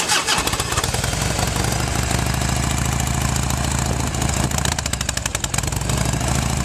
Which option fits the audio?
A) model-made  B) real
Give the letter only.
B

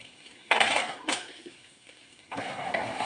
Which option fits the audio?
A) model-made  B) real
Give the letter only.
A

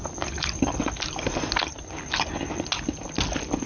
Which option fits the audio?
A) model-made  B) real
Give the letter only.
B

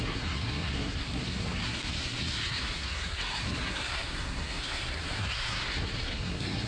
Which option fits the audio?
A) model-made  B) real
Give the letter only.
A